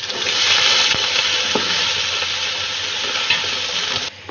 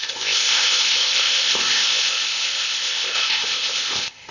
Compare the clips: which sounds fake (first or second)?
second